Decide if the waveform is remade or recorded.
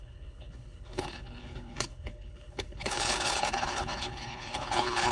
remade